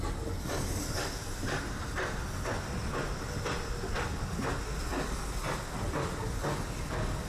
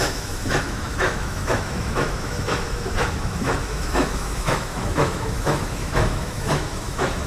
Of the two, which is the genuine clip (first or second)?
first